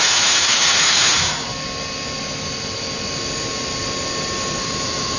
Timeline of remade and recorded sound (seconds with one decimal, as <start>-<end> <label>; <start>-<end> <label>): 0.0-1.5 remade; 1.5-4.6 recorded; 4.6-5.2 remade